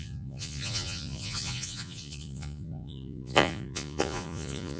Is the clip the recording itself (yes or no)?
no